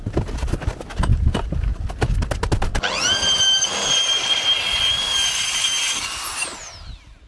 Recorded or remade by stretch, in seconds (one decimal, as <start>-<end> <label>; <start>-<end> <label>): 0.0-7.3 recorded